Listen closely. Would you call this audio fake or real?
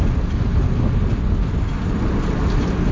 real